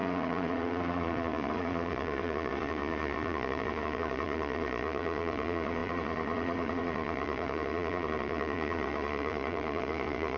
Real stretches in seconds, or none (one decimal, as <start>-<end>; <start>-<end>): none

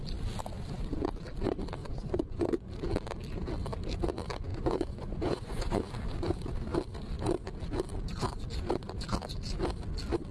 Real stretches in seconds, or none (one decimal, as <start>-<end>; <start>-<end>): 0.0-1.8; 2.7-4.5; 5.8-10.3

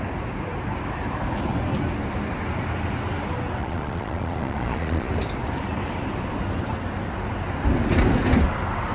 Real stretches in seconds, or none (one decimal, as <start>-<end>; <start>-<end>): 0.0-3.6; 5.1-8.9

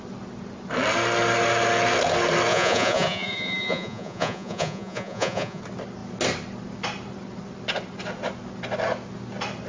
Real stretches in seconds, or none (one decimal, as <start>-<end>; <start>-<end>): 0.0-2.5; 5.6-9.7

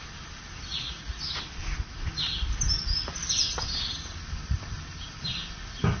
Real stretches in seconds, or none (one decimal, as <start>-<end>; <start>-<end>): 0.0-0.7; 1.2-6.0

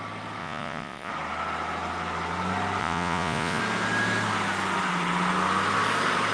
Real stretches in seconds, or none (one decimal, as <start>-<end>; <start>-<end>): 0.0-0.4; 1.1-2.8; 3.6-6.3

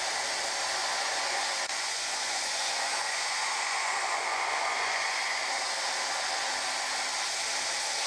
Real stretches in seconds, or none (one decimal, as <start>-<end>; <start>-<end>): 0.0-0.8; 5.5-8.1